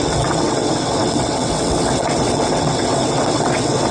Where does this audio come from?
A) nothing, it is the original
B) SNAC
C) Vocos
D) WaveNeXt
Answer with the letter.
D